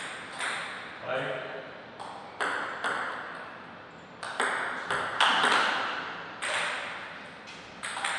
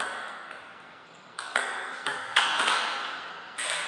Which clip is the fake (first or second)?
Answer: second